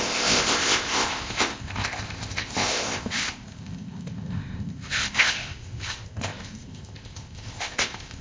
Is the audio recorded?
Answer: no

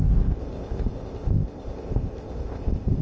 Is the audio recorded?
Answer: no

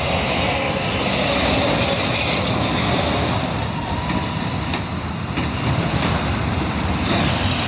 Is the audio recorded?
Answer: yes